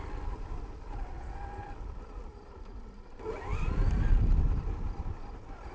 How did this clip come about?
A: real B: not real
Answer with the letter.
A